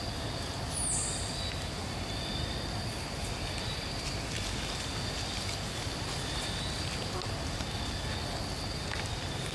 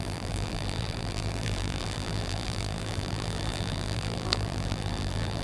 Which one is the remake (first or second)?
second